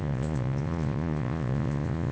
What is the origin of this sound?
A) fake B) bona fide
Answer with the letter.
A